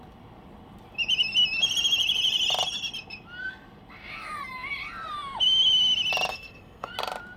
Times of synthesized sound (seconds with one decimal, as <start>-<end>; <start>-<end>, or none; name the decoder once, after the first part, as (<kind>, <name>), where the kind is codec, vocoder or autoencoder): 6.3-6.9 (codec, SNAC)